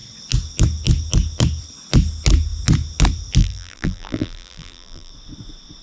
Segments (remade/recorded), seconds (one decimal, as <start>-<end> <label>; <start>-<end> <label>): 0.0-3.4 recorded; 3.4-5.1 remade; 5.1-5.8 recorded